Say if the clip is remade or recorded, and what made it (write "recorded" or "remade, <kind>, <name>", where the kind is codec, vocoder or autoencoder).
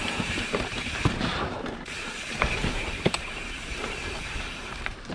remade, vocoder, BigVGAN v2